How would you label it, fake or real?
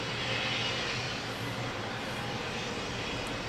real